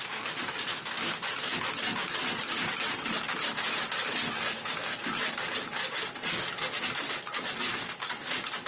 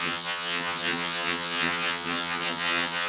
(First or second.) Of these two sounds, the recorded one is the first